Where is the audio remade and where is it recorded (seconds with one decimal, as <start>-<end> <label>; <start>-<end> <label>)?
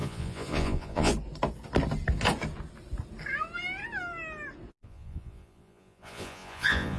0.0-1.1 remade; 1.1-4.7 recorded; 4.7-7.0 remade